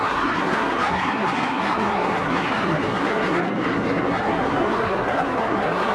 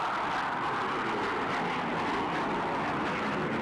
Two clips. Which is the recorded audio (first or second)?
second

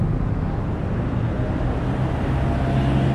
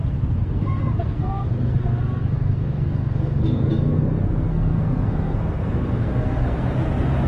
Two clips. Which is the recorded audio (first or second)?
first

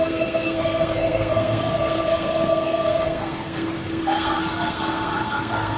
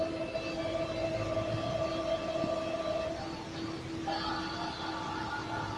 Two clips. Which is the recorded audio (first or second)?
second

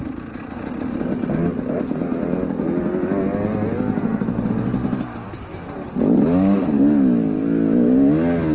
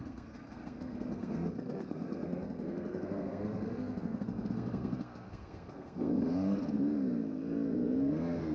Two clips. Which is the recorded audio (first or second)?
first